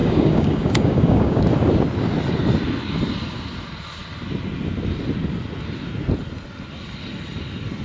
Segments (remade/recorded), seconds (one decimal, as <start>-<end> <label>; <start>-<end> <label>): 0.0-1.4 remade; 1.4-7.8 recorded